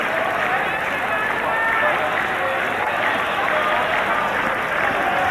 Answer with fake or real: real